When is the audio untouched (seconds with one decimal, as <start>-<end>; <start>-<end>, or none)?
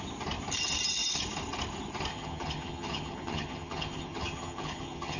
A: 0.0-2.1